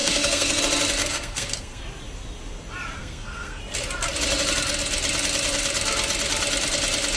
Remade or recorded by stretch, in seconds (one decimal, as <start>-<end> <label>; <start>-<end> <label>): 0.0-0.6 remade; 0.6-1.0 recorded; 1.0-1.8 remade; 1.8-3.0 recorded; 3.0-3.6 remade; 3.6-7.2 recorded